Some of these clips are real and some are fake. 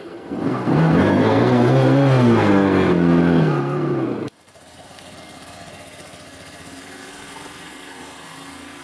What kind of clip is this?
fake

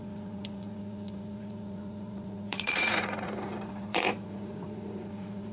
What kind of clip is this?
fake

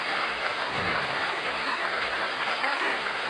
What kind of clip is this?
fake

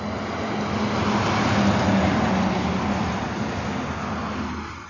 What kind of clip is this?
real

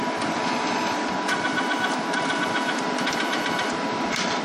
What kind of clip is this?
fake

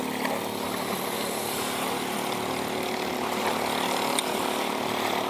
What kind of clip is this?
real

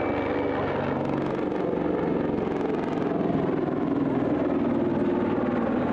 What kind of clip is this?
real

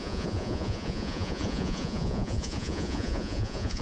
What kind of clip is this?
fake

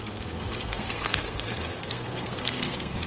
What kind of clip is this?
fake